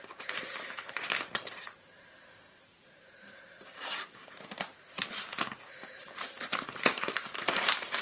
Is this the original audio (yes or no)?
no